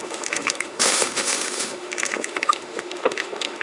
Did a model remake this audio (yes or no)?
yes